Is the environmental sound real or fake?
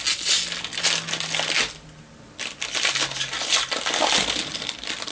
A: real